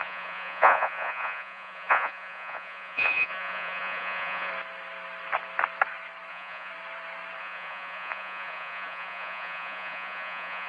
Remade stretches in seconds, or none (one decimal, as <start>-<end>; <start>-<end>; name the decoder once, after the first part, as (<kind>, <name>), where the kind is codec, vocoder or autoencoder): 0.0-4.5 (vocoder, Vocos); 6.3-6.7; 7.4-10.7